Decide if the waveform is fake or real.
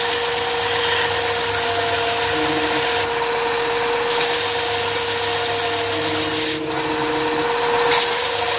real